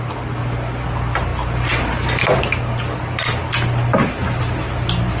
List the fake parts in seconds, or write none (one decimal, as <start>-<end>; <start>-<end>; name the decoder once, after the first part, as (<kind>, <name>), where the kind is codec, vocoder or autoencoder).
none